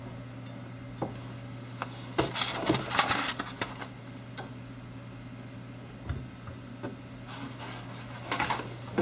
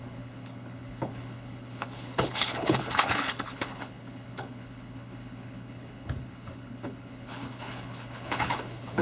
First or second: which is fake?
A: second